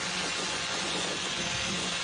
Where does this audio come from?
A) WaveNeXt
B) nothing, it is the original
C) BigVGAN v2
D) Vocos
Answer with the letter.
D